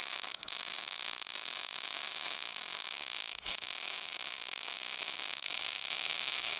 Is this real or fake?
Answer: fake